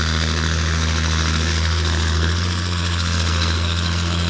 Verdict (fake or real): fake